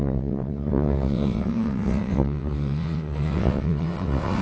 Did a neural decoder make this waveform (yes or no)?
yes